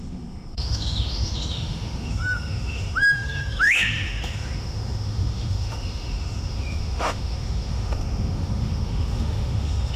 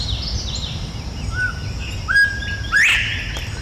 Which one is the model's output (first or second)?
first